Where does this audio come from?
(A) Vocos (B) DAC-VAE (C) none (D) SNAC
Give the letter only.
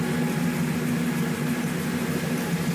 C